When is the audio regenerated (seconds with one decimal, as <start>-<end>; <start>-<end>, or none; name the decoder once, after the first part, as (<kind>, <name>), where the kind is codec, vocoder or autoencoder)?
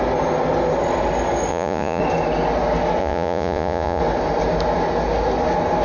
1.5-2.0 (vocoder, Vocos); 3.0-4.0